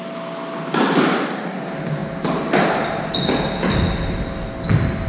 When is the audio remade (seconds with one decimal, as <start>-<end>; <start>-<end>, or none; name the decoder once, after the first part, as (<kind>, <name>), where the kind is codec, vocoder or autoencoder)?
none